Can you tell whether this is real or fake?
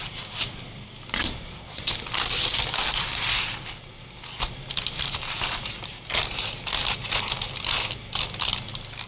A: real